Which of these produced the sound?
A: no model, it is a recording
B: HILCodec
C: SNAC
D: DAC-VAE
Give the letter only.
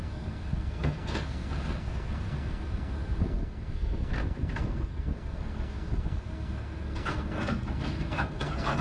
C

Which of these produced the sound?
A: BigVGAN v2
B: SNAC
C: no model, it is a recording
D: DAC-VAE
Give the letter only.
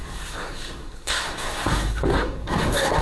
B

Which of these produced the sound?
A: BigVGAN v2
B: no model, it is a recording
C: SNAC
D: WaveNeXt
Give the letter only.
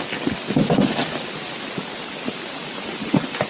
B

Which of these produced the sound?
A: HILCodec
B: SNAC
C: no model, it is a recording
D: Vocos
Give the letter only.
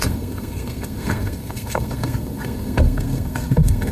B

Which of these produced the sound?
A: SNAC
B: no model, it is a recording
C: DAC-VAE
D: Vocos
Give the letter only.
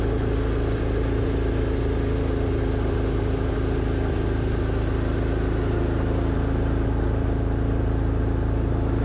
B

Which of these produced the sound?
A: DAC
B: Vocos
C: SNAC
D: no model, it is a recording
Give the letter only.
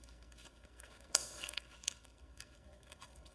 C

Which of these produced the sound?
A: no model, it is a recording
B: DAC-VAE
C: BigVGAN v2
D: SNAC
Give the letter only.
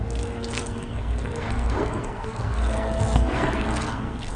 D